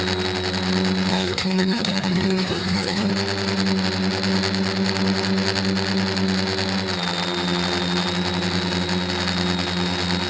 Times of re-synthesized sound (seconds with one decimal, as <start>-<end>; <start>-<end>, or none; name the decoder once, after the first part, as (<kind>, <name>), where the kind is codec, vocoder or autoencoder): 1.1-3.1 (codec, SNAC)